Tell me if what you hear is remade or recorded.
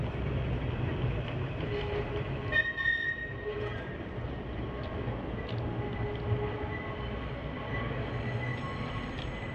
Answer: recorded